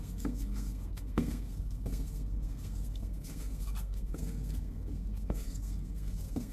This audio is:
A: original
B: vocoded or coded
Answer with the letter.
B